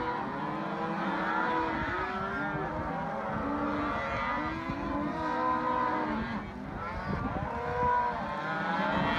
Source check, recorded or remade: recorded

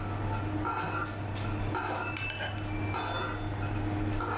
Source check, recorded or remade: recorded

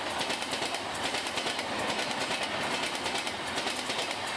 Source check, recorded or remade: recorded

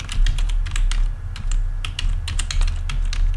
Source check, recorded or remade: recorded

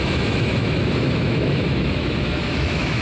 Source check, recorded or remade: remade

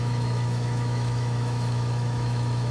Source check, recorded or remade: remade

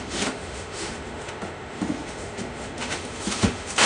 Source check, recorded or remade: remade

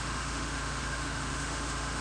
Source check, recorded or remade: remade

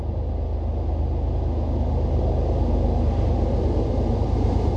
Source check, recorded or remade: recorded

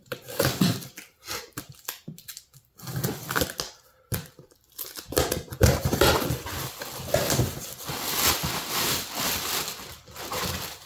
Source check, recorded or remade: recorded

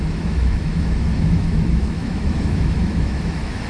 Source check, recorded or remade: remade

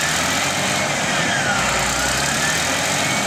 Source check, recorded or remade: recorded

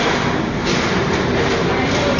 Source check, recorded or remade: recorded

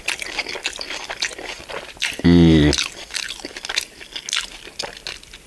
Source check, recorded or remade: recorded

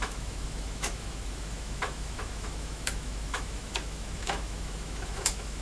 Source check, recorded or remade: remade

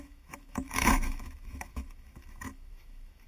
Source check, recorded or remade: remade